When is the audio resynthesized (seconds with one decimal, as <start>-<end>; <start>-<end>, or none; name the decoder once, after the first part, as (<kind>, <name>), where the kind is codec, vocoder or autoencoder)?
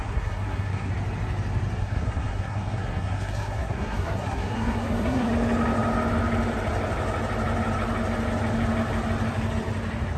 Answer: 0.0-0.9 (codec, SNAC); 1.8-5.3